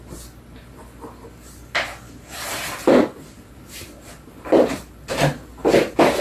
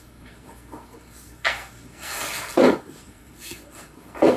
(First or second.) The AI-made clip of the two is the second